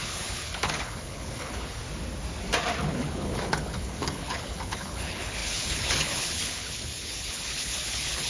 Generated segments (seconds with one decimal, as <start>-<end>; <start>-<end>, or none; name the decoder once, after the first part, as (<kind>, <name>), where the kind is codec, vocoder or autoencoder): 0.0-1.8 (codec, HILCodec); 2.8-8.3